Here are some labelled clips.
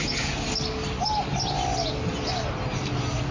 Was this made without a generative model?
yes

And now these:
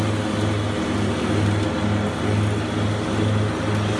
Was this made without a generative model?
yes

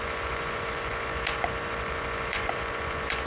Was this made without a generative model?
no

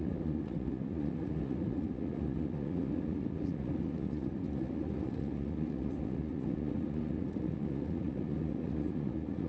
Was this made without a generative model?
no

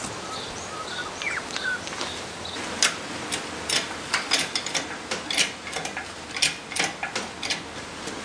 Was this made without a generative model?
yes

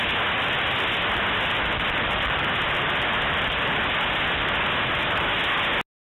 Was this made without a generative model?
yes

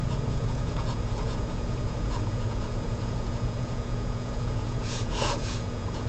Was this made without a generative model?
no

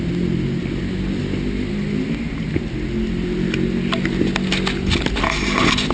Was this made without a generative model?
yes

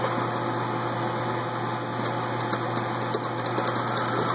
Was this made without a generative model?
yes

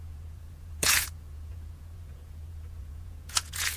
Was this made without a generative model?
no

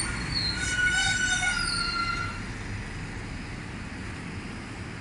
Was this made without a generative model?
yes